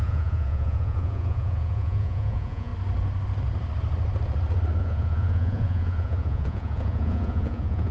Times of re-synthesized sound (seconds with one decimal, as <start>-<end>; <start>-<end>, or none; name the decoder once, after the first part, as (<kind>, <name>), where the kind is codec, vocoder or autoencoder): 0.0-2.7 (vocoder, Vocos); 4.8-7.9